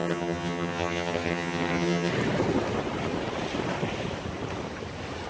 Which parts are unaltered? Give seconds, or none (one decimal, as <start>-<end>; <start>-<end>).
2.1-5.3